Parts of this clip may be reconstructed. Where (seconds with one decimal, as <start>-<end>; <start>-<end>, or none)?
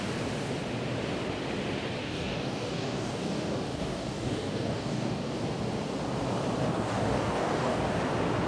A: 2.0-5.4; 6.6-7.8